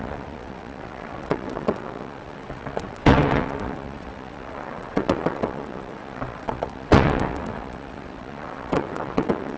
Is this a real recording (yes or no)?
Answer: no